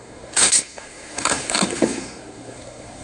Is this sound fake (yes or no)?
yes